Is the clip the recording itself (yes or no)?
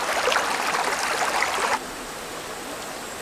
yes